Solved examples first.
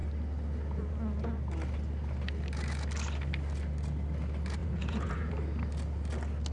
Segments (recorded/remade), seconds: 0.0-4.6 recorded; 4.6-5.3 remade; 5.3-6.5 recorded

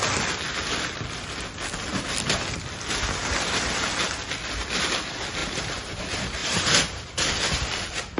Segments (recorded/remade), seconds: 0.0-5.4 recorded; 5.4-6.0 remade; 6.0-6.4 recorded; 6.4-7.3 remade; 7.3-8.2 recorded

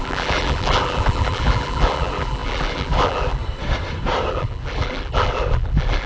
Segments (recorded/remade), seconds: 0.0-3.4 remade; 3.4-4.3 recorded; 4.3-6.1 remade

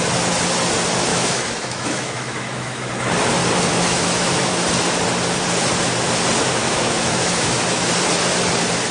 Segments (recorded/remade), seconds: 0.0-1.1 recorded; 1.1-2.9 remade; 2.9-3.7 recorded; 3.7-4.5 remade; 4.5-6.6 recorded; 6.6-7.9 remade; 7.9-8.9 recorded

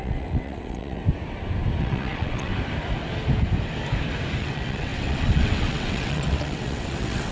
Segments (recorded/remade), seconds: 0.0-1.0 remade; 1.0-1.8 recorded; 1.8-2.5 remade; 2.5-4.4 recorded; 4.4-7.3 remade

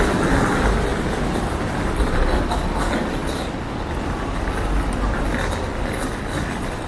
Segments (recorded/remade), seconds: 0.0-6.9 recorded

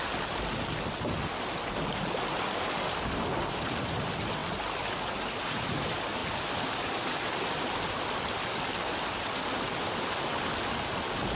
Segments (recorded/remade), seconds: 0.0-11.3 recorded

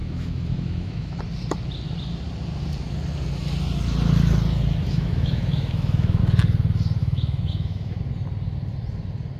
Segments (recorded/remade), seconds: 0.0-1.2 remade; 1.2-4.8 recorded; 4.8-6.2 remade; 6.2-7.0 recorded; 7.0-8.0 remade; 8.0-9.4 recorded